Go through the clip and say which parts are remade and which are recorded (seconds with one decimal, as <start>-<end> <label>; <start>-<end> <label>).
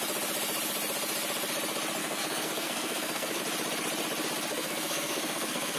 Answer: 0.0-2.0 recorded; 2.0-3.4 remade; 3.4-4.5 recorded; 4.5-5.8 remade